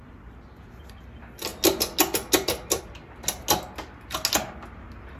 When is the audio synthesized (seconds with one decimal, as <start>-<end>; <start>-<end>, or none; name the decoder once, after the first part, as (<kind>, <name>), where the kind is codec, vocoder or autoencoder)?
none